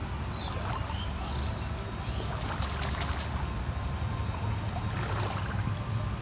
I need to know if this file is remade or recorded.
recorded